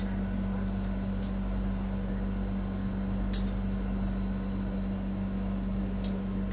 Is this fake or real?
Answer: real